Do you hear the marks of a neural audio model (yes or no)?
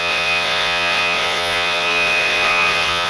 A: yes